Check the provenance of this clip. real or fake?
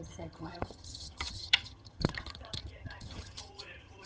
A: fake